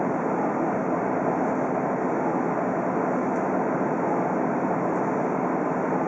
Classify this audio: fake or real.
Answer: real